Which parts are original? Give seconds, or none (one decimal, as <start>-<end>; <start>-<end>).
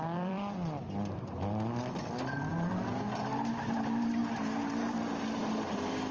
2.5-3.5; 4.2-5.2